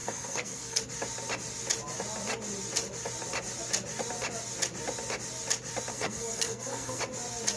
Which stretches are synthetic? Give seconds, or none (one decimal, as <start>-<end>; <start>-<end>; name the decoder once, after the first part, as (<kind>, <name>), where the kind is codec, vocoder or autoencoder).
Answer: 0.0-0.8 (codec, SNAC); 5.9-7.0